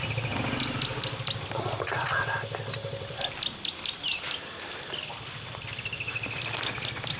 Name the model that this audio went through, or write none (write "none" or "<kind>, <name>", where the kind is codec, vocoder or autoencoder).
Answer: vocoder, BigVGAN v2